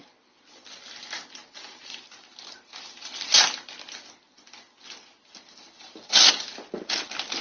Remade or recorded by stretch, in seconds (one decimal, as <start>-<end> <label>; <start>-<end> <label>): 0.0-7.4 remade